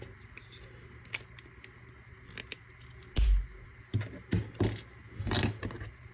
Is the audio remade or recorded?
recorded